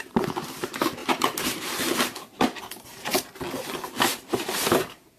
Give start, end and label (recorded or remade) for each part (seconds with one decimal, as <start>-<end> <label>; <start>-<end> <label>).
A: 0.0-3.1 remade; 3.1-3.7 recorded; 3.7-5.2 remade